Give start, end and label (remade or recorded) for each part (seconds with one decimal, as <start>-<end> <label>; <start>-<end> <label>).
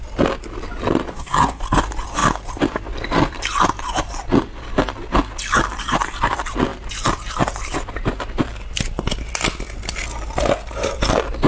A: 0.0-1.1 recorded; 1.1-1.6 remade; 1.6-11.5 recorded